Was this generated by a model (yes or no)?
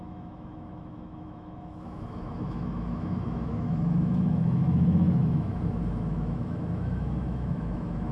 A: yes